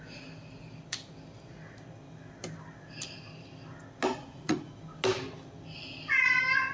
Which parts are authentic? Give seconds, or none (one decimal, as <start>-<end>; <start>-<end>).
0.0-4.1; 4.7-6.7